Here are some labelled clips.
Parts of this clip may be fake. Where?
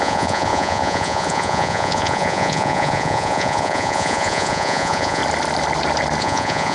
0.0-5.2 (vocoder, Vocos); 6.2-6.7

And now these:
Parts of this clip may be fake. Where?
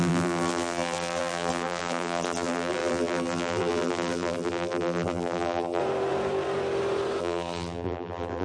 0.0-5.8 (vocoder, BigVGAN v2); 7.2-8.4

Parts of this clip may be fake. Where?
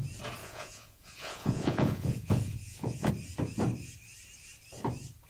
0.4-3.1 (vocoder, Vocos)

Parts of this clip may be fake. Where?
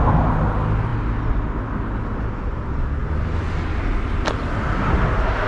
none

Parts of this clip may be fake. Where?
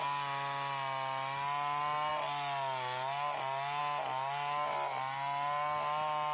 none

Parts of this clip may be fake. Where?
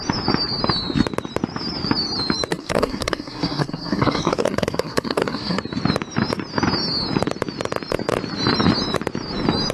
2.5-5.6 (codec, SNAC)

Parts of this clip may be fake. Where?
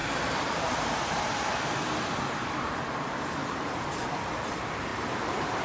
0.0-1.9 (vocoder, BigVGAN v2); 3.4-4.1; 4.9-5.6